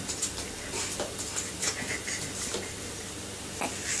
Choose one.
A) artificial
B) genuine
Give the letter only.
B